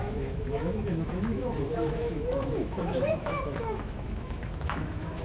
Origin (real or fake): fake